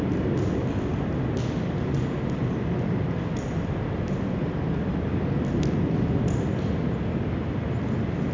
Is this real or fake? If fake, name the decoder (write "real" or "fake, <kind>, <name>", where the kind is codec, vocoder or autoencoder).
real